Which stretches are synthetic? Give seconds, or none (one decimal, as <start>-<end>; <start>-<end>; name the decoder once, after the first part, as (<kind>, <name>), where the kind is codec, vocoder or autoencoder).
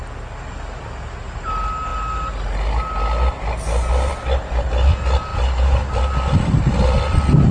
5.3-6.1 (vocoder, BigVGAN v2)